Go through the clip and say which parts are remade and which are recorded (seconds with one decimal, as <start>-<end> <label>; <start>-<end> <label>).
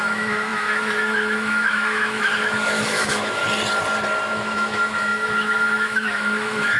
0.0-3.4 remade; 3.4-4.3 recorded; 4.3-6.8 remade